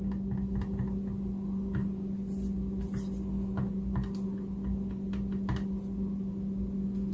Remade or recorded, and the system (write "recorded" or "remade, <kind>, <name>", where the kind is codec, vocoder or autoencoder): recorded